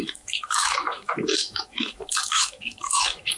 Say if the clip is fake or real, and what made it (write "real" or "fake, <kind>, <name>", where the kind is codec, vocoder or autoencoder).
fake, autoencoder, DAC-VAE